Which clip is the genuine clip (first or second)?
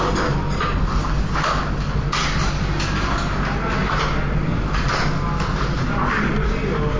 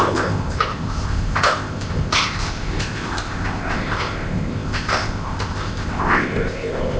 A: first